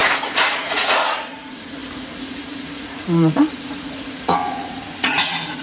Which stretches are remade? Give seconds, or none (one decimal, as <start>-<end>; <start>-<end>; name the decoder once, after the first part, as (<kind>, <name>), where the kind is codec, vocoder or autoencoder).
0.5-5.6 (vocoder, Vocos)